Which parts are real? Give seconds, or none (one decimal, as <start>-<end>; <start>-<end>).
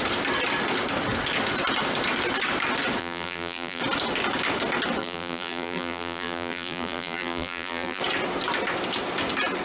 0.0-3.0; 3.8-5.0; 8.0-9.6